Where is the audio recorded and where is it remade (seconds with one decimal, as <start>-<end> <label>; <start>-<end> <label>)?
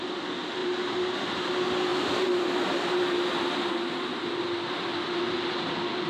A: 0.0-0.6 recorded; 0.6-1.4 remade; 1.4-1.9 recorded; 1.9-3.0 remade; 3.0-6.1 recorded